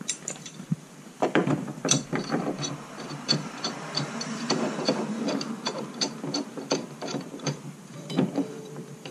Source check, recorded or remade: remade